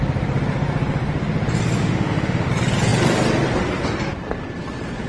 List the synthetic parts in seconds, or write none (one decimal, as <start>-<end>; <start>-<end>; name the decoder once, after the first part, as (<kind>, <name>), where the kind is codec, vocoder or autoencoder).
1.8-2.5 (autoencoder, DAC-VAE)